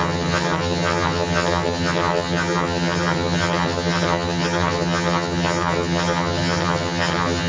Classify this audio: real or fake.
fake